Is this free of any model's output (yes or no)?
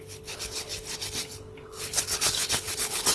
no